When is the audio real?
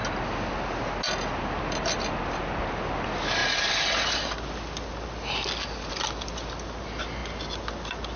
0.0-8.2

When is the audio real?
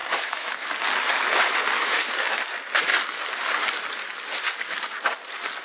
0.5-5.6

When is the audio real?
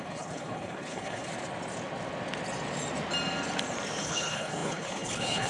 1.3-4.0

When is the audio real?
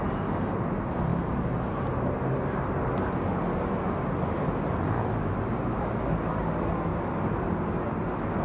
0.0-5.7; 6.3-8.4